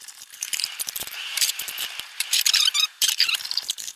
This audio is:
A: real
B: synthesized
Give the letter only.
B